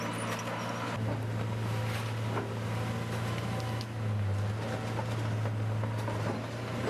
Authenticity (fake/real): real